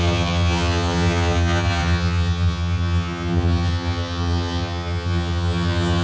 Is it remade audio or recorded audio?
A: remade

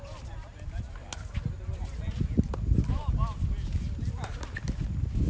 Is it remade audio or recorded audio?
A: recorded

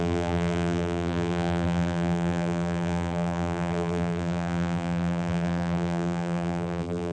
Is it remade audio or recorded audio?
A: remade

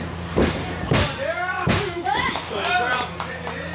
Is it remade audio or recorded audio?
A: recorded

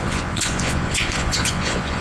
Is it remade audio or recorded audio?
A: remade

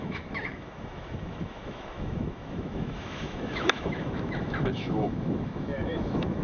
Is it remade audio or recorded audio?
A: remade